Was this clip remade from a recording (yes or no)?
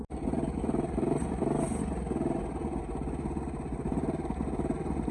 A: no